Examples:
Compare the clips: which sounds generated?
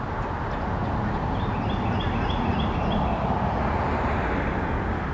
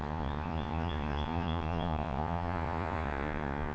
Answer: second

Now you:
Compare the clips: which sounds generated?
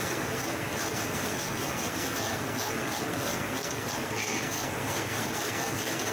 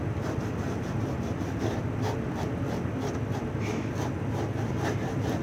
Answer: first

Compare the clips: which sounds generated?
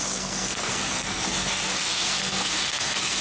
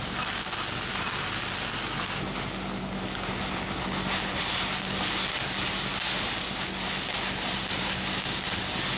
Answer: first